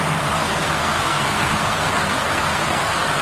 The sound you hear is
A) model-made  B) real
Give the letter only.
A